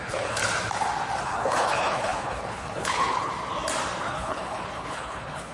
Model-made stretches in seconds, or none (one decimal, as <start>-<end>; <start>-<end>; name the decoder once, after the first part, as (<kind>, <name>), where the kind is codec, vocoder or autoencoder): 0.0-0.4 (codec, HILCodec); 1.2-3.3; 4.0-5.5